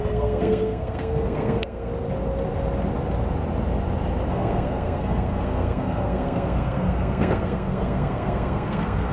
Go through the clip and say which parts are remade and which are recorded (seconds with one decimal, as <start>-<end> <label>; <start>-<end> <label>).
0.0-1.9 remade; 1.9-4.3 recorded; 4.3-9.1 remade